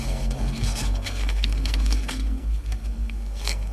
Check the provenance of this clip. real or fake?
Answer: fake